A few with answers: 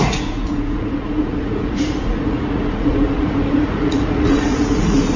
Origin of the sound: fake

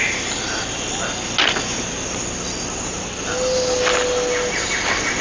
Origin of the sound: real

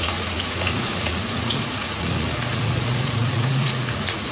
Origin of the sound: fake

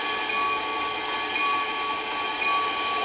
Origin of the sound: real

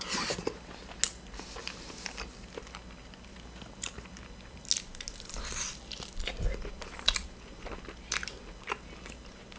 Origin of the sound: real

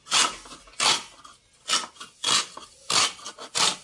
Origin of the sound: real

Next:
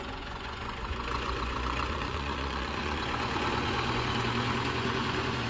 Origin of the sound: fake